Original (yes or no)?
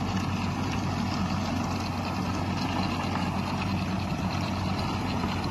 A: yes